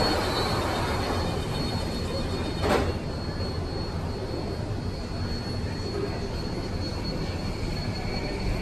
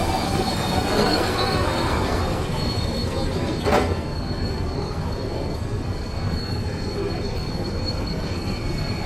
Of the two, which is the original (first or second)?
first